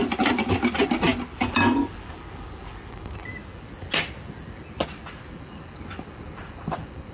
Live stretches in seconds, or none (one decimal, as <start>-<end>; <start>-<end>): 0.0-7.1